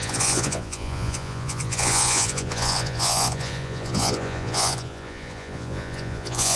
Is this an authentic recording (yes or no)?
no